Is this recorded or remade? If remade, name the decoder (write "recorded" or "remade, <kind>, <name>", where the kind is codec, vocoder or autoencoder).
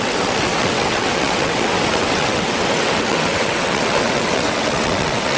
remade, vocoder, WaveNeXt